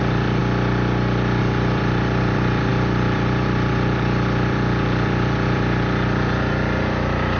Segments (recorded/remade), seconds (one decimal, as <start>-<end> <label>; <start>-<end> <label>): 0.0-0.4 remade; 0.4-1.4 recorded; 1.4-7.4 remade